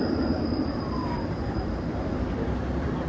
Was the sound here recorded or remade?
remade